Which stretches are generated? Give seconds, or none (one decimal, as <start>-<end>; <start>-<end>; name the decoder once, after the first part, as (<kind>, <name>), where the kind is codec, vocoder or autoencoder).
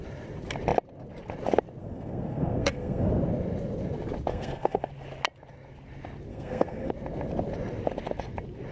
1.8-3.1 (codec, SNAC); 4.3-4.9; 6.3-6.9